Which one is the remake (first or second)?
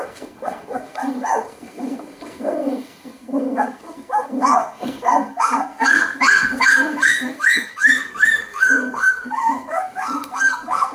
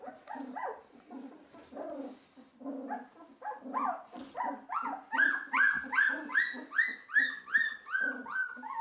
first